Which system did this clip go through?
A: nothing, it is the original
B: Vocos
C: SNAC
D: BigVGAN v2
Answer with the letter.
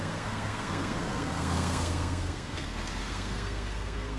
C